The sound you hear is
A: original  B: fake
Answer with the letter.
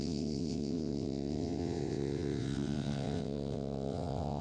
B